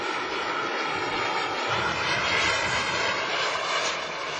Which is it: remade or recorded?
recorded